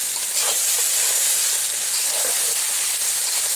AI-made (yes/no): no